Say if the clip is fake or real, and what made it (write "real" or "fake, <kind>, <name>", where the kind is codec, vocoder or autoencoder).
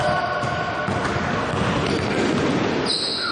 real